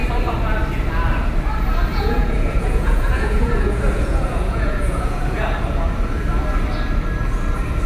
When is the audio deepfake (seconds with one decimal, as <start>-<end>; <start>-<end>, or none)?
1.9-5.4